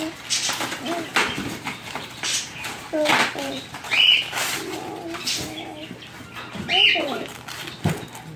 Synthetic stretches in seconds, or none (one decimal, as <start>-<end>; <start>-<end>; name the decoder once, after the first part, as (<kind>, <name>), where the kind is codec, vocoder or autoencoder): 1.1-4.0 (vocoder, BigVGAN v2)